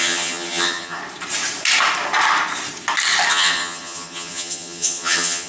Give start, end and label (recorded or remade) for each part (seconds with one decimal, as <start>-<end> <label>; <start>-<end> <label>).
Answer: 0.0-1.0 remade; 1.0-3.3 recorded; 3.3-5.5 remade